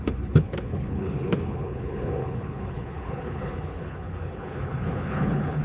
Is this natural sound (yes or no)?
no